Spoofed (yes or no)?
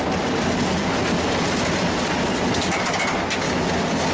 no